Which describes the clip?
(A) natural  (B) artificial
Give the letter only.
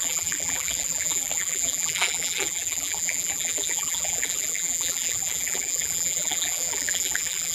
B